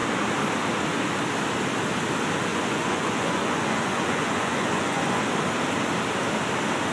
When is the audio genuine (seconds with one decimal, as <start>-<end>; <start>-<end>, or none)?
0.0-2.5; 5.2-6.9